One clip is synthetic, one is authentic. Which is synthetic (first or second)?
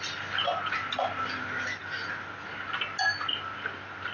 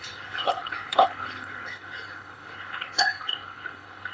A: second